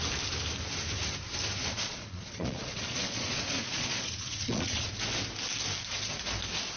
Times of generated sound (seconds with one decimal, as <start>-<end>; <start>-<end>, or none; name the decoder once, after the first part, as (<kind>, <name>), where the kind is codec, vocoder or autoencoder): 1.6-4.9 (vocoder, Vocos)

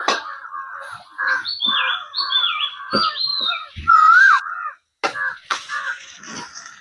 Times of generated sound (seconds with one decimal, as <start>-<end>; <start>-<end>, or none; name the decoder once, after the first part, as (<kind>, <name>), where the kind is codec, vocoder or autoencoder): 3.3-4.4 (vocoder, Vocos); 5.3-6.1

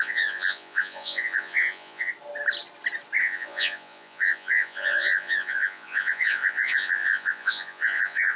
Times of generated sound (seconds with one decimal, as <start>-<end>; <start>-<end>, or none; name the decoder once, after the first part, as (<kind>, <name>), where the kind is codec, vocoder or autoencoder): 0.0-2.1 (vocoder, Vocos); 3.2-8.4

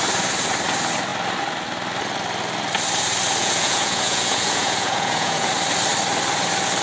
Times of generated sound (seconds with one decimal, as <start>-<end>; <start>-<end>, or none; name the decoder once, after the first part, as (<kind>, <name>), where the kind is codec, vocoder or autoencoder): 3.4-5.5 (vocoder, Vocos)

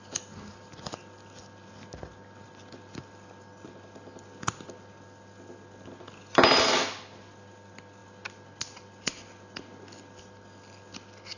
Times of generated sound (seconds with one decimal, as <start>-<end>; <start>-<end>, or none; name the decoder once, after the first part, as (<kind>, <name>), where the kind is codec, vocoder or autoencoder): none

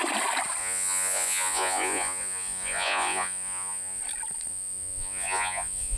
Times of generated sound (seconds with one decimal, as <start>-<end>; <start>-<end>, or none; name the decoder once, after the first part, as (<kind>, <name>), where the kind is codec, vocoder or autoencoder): 0.6-4.0 (vocoder, Vocos); 4.5-6.0

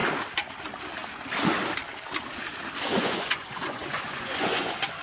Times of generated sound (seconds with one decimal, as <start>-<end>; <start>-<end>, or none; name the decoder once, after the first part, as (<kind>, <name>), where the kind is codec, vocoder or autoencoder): 2.9-5.0 (vocoder, Vocos)

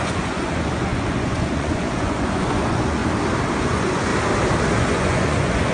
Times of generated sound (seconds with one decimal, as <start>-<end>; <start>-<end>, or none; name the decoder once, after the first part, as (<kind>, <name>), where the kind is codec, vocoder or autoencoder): 0.0-3.0 (vocoder, Vocos); 3.6-4.1; 4.8-5.7